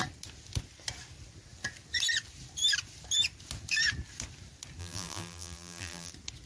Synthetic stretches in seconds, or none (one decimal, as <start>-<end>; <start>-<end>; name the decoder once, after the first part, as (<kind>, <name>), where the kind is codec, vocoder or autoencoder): 4.8-6.1 (vocoder, BigVGAN v2)